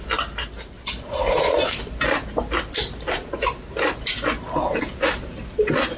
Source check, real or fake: real